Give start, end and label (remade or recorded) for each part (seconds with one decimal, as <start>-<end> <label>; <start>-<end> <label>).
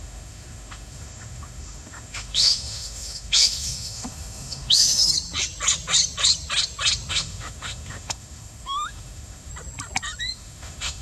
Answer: 0.0-5.0 remade; 5.0-7.1 recorded; 7.1-9.5 remade; 9.5-10.2 recorded; 10.2-11.0 remade